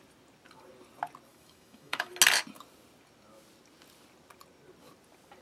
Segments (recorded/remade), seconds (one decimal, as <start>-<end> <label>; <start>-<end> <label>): 0.0-1.3 recorded; 1.3-2.1 remade; 2.1-5.4 recorded